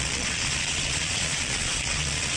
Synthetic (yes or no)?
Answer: yes